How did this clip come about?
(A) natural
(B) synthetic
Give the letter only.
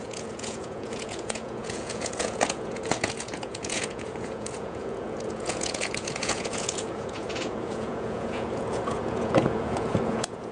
B